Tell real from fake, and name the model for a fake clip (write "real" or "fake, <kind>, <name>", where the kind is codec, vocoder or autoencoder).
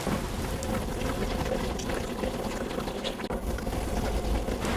real